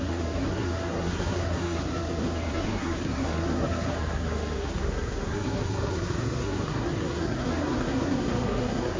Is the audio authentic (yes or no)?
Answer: no